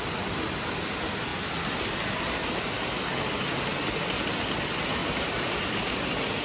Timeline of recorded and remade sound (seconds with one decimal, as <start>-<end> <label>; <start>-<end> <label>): 0.0-6.4 recorded